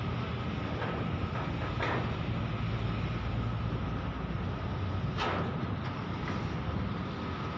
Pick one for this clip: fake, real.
real